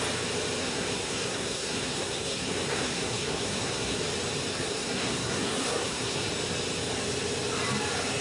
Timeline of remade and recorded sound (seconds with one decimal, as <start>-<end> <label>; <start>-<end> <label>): 0.0-0.6 recorded; 0.6-4.0 remade; 4.0-4.5 recorded; 4.5-6.3 remade; 6.3-8.2 recorded